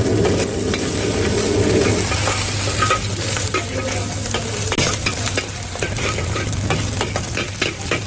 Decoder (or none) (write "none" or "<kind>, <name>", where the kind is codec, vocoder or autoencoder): none